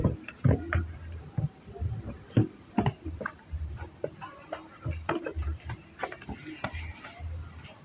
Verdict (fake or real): fake